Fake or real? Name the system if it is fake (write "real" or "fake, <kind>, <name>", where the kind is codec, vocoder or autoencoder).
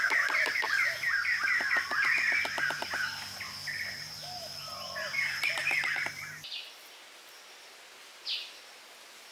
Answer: real